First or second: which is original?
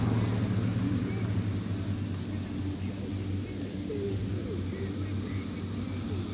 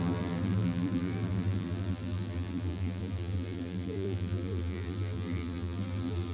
first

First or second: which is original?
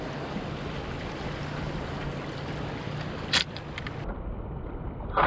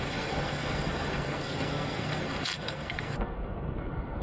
first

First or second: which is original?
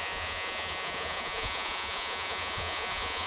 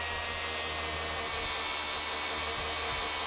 second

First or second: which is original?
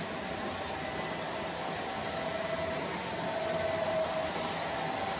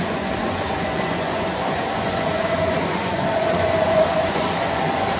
first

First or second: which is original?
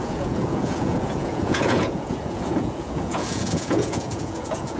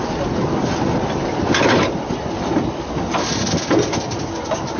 second